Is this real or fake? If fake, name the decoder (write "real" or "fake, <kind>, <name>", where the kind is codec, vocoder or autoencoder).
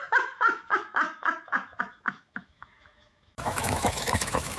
fake, autoencoder, DAC-VAE